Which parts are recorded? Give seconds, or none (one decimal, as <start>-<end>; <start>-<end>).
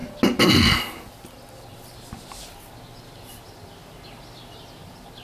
0.0-5.2